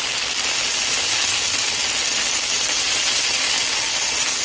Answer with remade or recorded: recorded